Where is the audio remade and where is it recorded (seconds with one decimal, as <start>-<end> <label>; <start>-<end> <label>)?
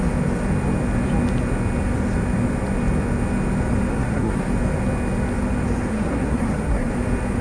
0.0-3.9 recorded; 3.9-4.5 remade; 4.5-5.9 recorded; 5.9-6.9 remade; 6.9-7.4 recorded